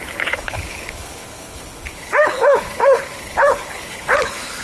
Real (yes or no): no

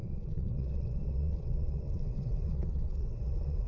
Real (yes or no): no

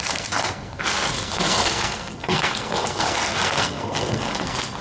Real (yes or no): no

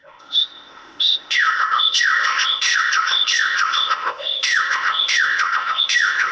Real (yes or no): no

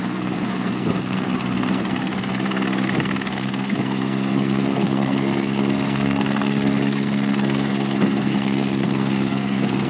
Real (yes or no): no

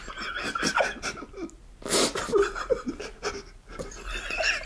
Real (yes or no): yes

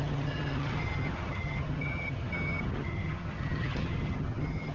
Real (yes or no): no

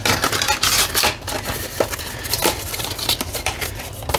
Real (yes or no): no